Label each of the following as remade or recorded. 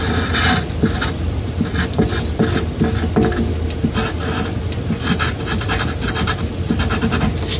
recorded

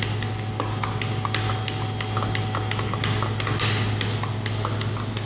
recorded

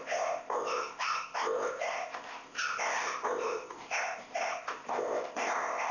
remade